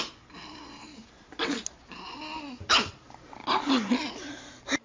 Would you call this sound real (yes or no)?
yes